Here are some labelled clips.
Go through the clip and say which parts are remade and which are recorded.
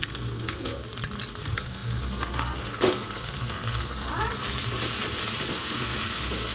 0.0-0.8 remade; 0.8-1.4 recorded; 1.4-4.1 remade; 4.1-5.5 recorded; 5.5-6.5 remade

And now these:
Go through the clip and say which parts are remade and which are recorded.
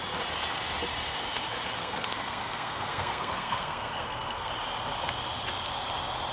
0.0-1.8 recorded; 1.8-4.5 remade; 4.5-6.3 recorded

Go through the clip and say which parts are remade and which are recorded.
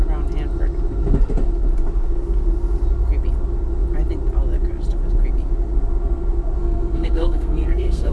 0.0-6.6 recorded; 6.6-8.1 remade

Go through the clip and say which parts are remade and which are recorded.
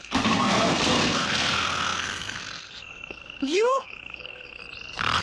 0.0-4.6 remade; 4.6-5.2 recorded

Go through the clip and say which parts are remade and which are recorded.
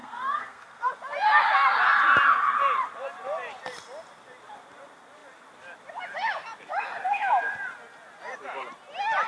0.0-0.9 remade; 0.9-9.3 recorded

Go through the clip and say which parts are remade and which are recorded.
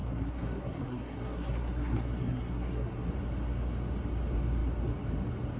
0.0-3.1 remade; 3.1-5.6 recorded